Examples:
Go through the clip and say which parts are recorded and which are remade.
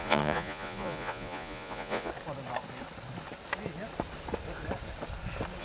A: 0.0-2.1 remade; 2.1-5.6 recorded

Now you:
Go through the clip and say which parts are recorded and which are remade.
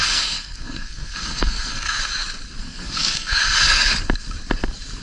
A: 0.0-2.0 remade; 2.0-2.6 recorded; 2.6-3.9 remade; 3.9-5.0 recorded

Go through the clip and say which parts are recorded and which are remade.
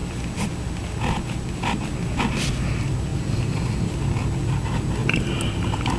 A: 0.0-6.0 recorded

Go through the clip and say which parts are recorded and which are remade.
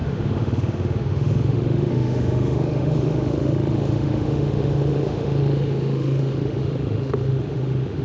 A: 0.0-8.0 remade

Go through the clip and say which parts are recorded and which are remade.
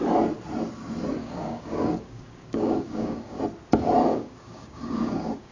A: 0.0-1.2 recorded; 1.2-3.4 remade; 3.4-4.1 recorded; 4.1-5.5 remade